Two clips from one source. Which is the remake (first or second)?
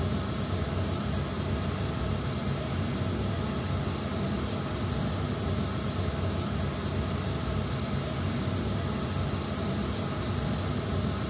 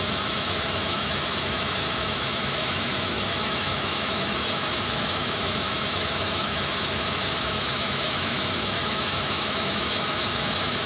second